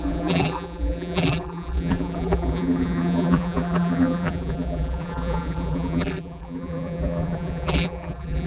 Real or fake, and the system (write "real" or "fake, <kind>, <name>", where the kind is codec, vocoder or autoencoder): fake, vocoder, BigVGAN v2